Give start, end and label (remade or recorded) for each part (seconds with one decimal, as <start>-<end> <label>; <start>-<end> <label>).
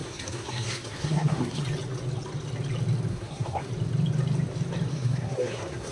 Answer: 0.0-1.6 remade; 1.6-3.1 recorded; 3.1-3.7 remade; 3.7-4.9 recorded; 4.9-5.9 remade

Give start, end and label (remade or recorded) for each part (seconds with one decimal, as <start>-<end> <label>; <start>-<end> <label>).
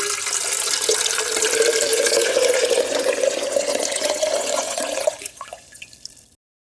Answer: 0.0-1.9 recorded; 1.9-5.9 remade; 5.9-6.7 recorded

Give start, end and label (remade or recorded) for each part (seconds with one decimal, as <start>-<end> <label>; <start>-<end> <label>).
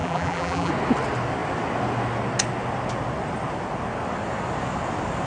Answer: 0.0-0.7 remade; 0.7-5.3 recorded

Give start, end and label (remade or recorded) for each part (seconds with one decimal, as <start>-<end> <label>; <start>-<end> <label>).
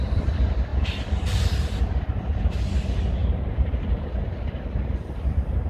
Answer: 0.0-3.2 recorded; 3.2-4.2 remade; 4.2-5.7 recorded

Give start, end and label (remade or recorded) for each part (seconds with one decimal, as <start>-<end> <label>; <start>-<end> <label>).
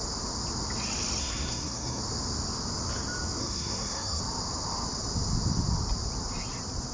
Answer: 0.0-1.2 recorded; 1.2-2.0 remade; 2.0-3.4 recorded; 3.4-4.2 remade; 4.2-6.9 recorded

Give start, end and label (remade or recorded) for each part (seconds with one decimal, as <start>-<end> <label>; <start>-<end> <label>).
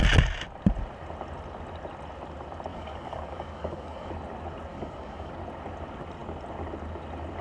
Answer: 0.0-2.7 recorded; 2.7-4.1 remade; 4.1-4.7 recorded; 4.7-5.3 remade; 5.3-7.4 recorded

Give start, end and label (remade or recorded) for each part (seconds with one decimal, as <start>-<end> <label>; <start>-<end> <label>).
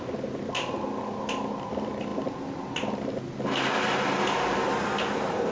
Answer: 0.0-5.5 recorded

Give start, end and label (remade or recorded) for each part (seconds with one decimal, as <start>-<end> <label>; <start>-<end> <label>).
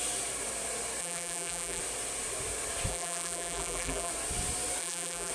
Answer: 0.0-1.0 recorded; 1.0-1.8 remade; 1.8-2.9 recorded; 2.9-4.1 remade; 4.1-4.8 recorded; 4.8-5.3 remade